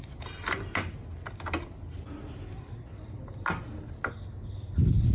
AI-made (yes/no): no